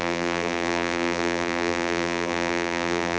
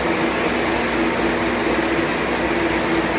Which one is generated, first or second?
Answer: first